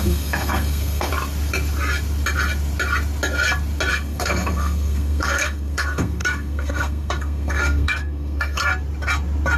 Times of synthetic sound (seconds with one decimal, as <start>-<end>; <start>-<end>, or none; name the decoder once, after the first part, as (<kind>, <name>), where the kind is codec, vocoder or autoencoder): 0.0-1.1 (codec, SNAC); 3.9-8.7